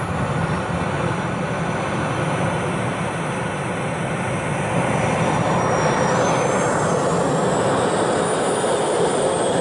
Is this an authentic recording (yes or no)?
yes